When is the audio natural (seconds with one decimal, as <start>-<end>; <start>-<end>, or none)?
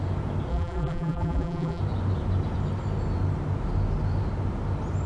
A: 0.0-0.5; 1.8-5.1